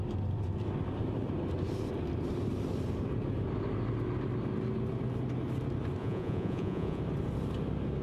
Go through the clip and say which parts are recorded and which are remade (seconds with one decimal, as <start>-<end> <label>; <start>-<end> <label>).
0.0-6.0 recorded; 6.0-7.0 remade; 7.0-8.0 recorded